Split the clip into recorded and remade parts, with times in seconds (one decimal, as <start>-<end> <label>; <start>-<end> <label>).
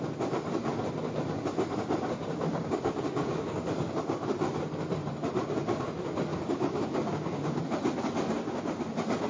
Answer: 0.0-2.5 recorded; 2.5-3.7 remade; 3.7-6.3 recorded; 6.3-7.6 remade; 7.6-9.3 recorded